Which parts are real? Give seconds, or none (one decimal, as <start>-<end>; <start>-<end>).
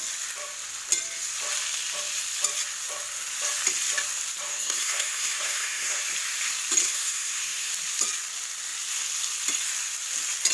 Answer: 0.0-4.5; 6.0-6.8; 7.7-10.5